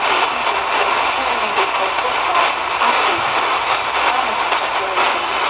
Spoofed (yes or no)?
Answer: no